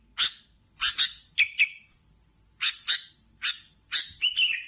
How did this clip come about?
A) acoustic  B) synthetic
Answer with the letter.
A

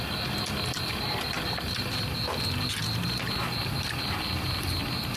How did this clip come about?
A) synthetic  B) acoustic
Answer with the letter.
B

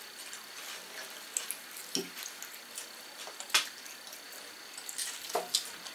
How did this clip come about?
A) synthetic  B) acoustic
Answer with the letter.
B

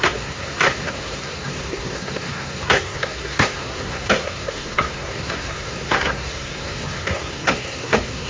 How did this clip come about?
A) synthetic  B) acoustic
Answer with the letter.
A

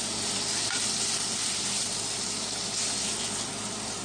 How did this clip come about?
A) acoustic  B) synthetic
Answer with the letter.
A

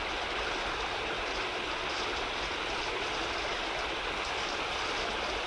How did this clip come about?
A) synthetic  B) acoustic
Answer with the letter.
B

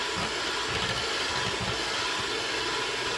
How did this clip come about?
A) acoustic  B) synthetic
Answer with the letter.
A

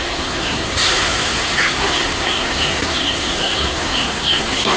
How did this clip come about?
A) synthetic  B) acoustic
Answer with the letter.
A